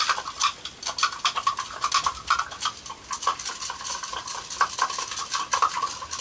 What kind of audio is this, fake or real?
real